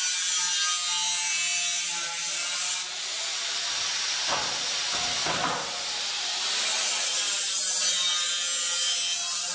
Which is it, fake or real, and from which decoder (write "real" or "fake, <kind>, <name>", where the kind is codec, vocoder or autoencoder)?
real